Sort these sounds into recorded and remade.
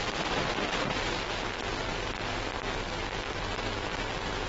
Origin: recorded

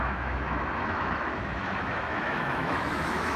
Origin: remade